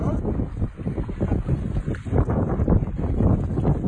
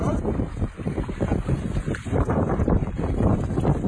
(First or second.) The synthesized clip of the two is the second